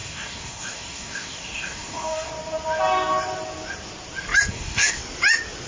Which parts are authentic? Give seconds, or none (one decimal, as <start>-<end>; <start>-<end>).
2.3-4.5; 5.0-5.7